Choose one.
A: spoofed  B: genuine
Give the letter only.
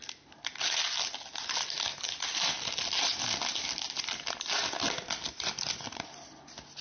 B